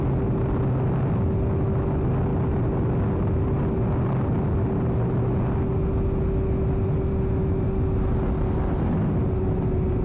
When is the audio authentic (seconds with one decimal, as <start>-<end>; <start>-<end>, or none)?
0.0-10.0